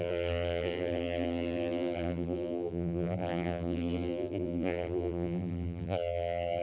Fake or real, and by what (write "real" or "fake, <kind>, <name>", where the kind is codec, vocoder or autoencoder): fake, vocoder, BigVGAN v2